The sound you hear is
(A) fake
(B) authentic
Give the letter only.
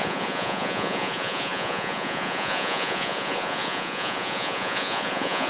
A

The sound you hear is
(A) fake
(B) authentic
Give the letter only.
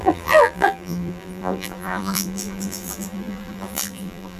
A